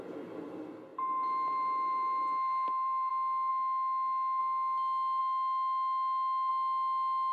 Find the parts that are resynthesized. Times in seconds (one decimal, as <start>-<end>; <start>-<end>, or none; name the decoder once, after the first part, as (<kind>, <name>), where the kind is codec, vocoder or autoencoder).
0.9-3.1 (vocoder, BigVGAN v2)